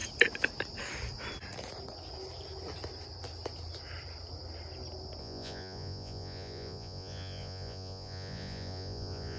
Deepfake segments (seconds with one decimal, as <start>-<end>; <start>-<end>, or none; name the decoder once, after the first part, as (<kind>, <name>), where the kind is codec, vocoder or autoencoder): 5.2-9.4 (vocoder, Vocos)